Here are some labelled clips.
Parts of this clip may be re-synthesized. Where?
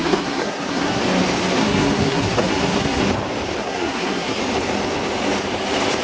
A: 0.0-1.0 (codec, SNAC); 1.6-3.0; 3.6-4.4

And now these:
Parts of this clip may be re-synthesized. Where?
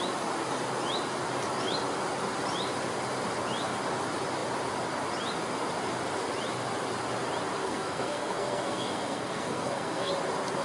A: 7.6-10.1 (codec, SNAC)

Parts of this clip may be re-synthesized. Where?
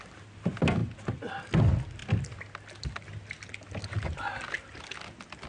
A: none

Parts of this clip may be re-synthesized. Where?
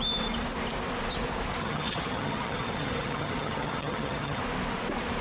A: 1.6-4.4 (vocoder, HiFi-GAN)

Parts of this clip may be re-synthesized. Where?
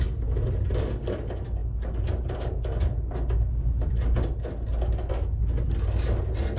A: none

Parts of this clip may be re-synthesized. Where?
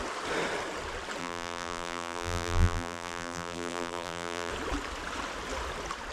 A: 1.2-4.5 (vocoder, BigVGAN v2)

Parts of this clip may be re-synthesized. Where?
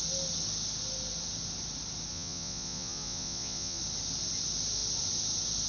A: 2.1-3.8 (vocoder, Vocos)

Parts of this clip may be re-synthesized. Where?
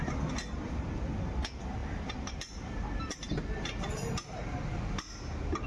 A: none